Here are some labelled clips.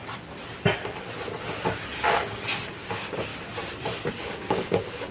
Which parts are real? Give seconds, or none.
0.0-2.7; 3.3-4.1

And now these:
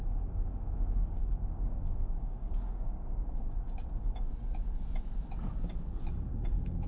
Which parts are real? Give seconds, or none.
4.3-6.0

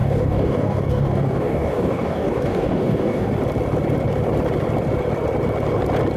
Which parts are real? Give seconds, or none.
3.3-6.2

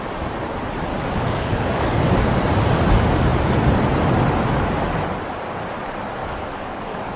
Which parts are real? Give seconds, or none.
0.0-0.9; 2.1-6.2